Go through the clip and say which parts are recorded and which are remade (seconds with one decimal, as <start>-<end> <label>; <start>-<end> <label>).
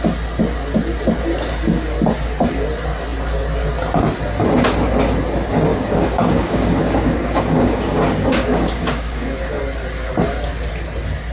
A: 0.0-5.7 recorded; 5.7-9.6 remade; 9.6-11.3 recorded